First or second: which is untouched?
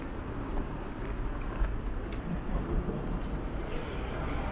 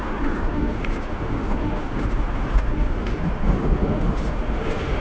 first